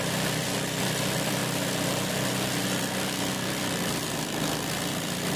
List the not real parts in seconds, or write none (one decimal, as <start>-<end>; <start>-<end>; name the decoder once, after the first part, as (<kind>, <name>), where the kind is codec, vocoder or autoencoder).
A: 0.0-5.4 (vocoder, BigVGAN v2)